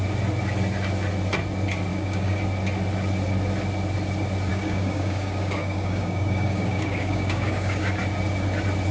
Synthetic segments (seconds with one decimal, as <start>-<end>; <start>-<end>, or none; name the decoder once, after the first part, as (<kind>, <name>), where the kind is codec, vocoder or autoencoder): 1.9-2.4 (codec, DAC); 4.5-8.0